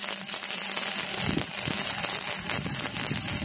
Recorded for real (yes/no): yes